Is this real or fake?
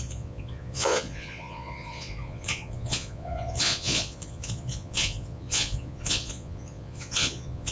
fake